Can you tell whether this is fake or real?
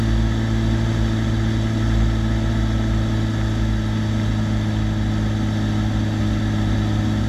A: real